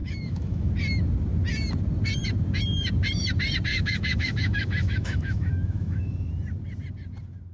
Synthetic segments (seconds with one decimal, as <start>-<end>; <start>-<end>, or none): 0.0-0.7; 3.7-6.3

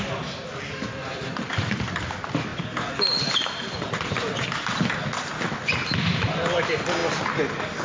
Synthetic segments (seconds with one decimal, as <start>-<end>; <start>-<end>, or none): none

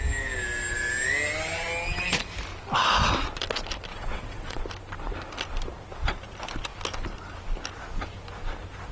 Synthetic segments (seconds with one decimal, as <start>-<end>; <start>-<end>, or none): 3.9-4.6

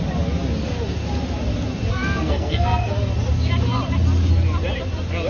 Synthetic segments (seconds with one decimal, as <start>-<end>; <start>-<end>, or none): 1.9-2.9

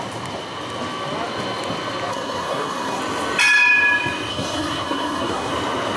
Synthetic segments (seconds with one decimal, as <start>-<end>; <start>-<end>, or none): 2.1-3.0; 4.3-5.5

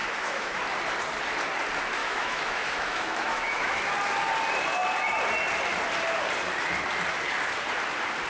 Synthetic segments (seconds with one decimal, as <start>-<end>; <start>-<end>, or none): 0.0-0.6; 2.0-3.9

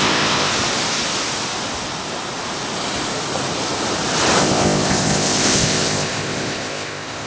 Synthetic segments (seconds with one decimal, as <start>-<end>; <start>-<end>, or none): 0.0-0.5; 4.4-7.3

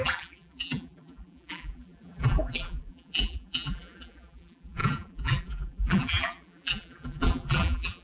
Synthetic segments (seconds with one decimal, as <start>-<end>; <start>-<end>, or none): 0.0-8.0